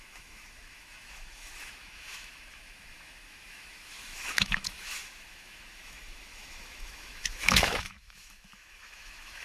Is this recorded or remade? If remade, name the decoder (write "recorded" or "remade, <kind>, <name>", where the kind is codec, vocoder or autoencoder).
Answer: remade, autoencoder, DAC-VAE